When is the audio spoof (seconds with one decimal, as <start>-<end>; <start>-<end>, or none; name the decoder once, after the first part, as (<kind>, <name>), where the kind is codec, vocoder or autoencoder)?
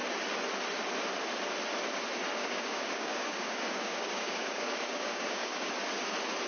2.3-5.7 (codec, DAC)